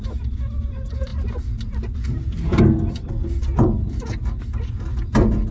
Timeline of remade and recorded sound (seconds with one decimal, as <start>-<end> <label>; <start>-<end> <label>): 0.0-5.5 recorded